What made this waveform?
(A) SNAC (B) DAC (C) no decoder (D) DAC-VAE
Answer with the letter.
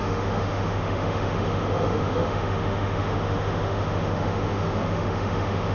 D